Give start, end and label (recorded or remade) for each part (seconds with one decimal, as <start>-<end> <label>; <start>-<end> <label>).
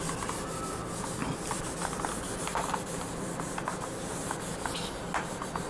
0.0-5.7 recorded